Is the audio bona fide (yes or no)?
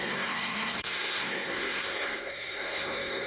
no